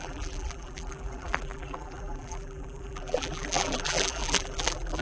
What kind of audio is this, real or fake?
fake